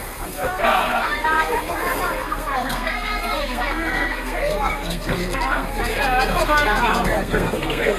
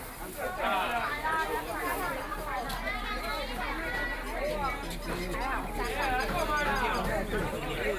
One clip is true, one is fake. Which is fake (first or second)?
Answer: first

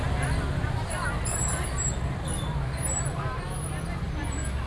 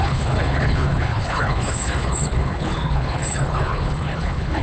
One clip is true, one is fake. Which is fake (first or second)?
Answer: second